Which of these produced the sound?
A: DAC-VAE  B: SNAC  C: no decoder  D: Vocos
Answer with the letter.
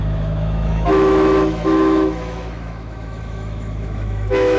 A